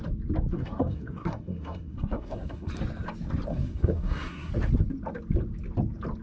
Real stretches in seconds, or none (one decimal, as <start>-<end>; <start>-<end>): 0.0-0.5; 2.7-3.5; 4.5-6.2